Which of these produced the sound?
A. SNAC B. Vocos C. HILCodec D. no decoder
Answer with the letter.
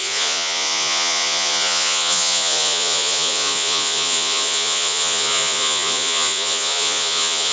B